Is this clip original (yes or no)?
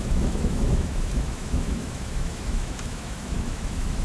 no